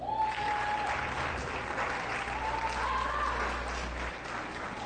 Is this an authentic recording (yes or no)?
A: yes